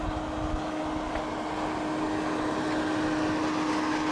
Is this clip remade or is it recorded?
recorded